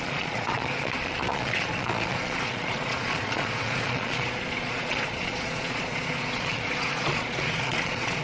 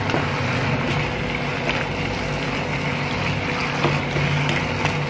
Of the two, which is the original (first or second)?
second